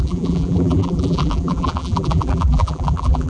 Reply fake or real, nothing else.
fake